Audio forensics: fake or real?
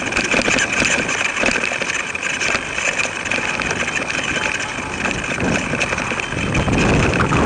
real